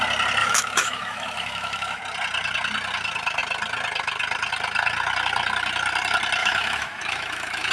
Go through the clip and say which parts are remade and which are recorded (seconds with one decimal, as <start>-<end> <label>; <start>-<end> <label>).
0.0-0.4 recorded; 0.4-2.0 remade; 2.0-6.4 recorded; 6.4-7.7 remade